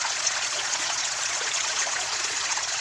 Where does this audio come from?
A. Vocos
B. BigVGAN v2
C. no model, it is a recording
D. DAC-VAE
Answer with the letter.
A